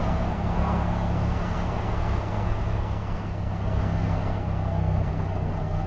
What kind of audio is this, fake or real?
fake